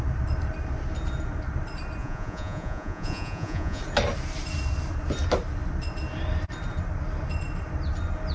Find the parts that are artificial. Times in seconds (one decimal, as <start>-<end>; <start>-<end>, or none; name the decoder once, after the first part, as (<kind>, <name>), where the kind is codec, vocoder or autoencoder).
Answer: 2.0-3.8 (vocoder, Vocos)